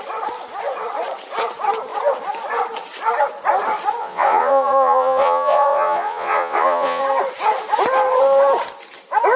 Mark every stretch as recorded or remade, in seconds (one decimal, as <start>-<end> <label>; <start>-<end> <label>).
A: 0.0-4.0 recorded; 4.0-7.0 remade; 7.0-9.4 recorded